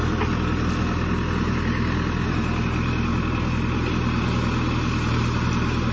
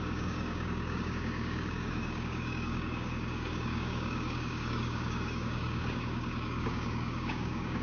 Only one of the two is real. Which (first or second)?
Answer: first